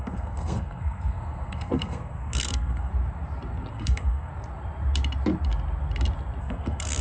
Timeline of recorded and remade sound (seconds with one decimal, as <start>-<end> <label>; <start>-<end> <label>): 0.0-2.9 remade; 2.9-3.7 recorded; 3.7-4.3 remade; 4.3-6.4 recorded; 6.4-7.0 remade